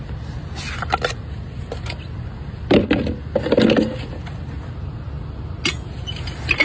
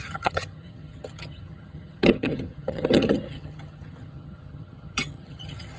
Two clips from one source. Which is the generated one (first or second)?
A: second